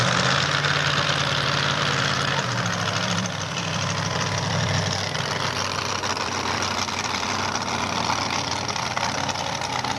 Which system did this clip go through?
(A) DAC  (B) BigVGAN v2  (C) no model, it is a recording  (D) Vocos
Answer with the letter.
B